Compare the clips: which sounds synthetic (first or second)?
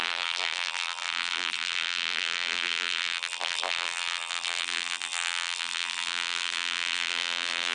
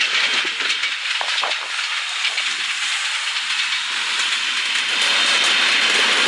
first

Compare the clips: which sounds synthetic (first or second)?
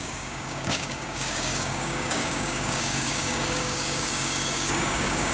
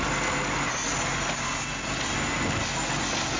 first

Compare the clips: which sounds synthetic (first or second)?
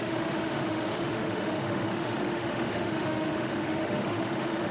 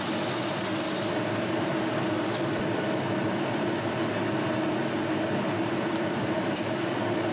first